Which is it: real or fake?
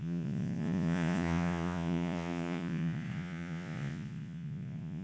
fake